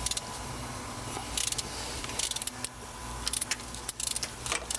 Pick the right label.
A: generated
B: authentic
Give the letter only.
B